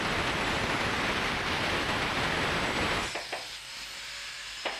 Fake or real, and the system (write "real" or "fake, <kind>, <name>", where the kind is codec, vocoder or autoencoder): real